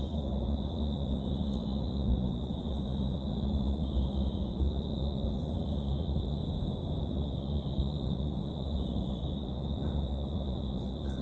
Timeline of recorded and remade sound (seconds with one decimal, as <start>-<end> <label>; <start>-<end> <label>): 0.0-6.4 remade; 6.4-7.0 recorded; 7.0-11.2 remade